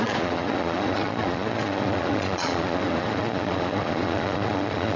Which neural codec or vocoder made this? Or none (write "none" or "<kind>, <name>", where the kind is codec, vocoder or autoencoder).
vocoder, Vocos